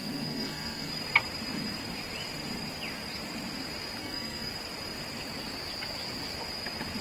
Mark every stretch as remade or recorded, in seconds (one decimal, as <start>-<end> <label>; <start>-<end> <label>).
0.0-0.9 remade; 0.9-4.0 recorded; 4.0-4.5 remade; 4.5-7.0 recorded